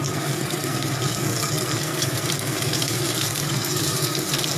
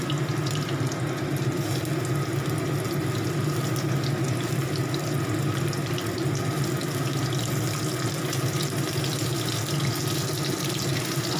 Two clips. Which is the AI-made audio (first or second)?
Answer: first